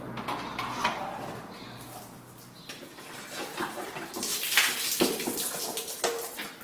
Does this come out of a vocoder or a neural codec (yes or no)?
no